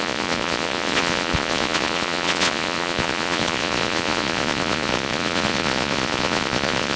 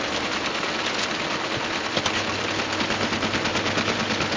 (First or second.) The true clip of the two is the second